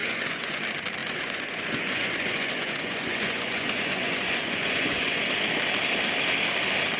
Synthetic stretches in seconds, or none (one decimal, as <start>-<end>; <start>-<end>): 0.0-0.6; 1.0-5.2